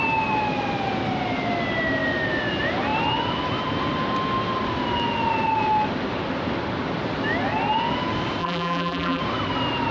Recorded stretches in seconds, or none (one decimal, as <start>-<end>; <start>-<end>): 0.0-8.4; 9.2-9.9